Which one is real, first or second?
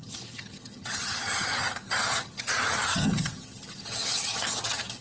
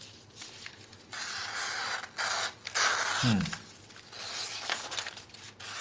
second